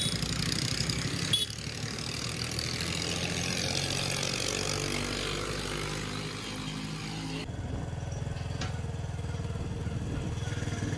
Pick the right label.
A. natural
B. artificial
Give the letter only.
A